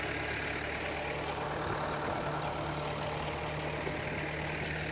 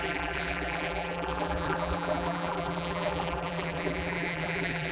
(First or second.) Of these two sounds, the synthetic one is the second